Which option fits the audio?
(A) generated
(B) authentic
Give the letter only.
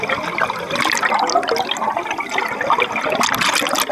B